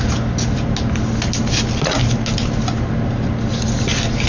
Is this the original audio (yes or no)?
yes